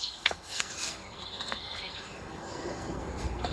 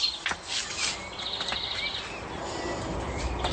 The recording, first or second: second